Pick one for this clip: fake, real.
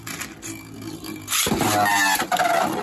real